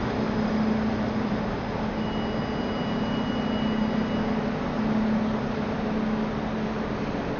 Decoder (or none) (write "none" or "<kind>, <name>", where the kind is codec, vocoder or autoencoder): none